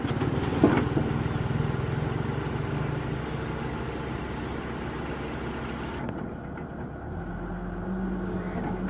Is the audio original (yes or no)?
yes